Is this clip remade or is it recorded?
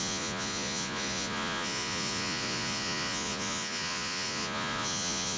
remade